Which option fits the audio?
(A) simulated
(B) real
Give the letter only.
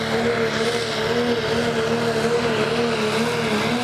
B